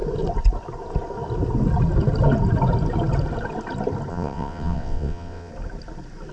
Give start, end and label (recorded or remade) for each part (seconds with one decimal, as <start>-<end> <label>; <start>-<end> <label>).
0.0-4.1 recorded; 4.1-5.5 remade; 5.5-6.3 recorded

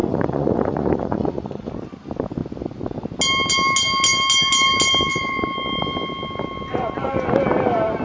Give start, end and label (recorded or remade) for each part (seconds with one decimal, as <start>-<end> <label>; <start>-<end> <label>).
0.0-1.7 remade; 1.7-8.0 recorded

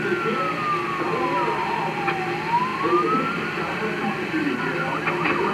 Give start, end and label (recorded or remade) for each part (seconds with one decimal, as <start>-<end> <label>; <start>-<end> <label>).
0.0-1.1 recorded; 1.1-2.2 remade; 2.2-2.7 recorded; 2.7-4.2 remade; 4.2-5.5 recorded

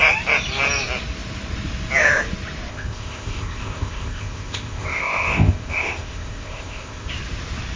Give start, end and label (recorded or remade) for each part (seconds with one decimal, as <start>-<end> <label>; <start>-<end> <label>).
0.0-2.7 recorded; 2.7-7.1 remade; 7.1-7.8 recorded